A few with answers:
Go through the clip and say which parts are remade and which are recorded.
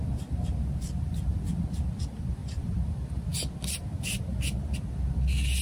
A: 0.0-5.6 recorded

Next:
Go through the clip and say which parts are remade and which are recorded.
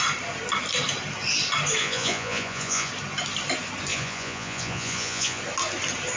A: 0.0-1.8 recorded; 1.8-2.9 remade; 2.9-3.9 recorded; 3.9-5.4 remade; 5.4-6.2 recorded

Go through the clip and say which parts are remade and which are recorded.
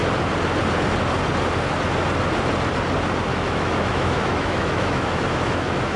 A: 0.0-3.3 recorded; 3.3-6.0 remade